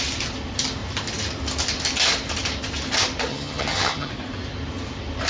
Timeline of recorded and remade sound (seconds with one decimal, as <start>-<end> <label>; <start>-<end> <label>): 0.0-3.3 recorded; 3.3-4.1 remade; 4.1-5.3 recorded